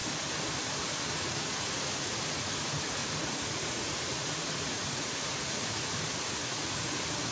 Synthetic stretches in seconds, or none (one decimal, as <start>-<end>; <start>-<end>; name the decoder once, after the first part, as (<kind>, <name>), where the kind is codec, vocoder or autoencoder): 1.1-7.3 (vocoder, Vocos)